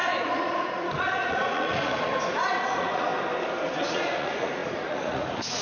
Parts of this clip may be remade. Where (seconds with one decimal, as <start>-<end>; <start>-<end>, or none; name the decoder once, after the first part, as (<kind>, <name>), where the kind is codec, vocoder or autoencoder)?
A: 0.0-3.1 (vocoder, Vocos); 3.8-5.6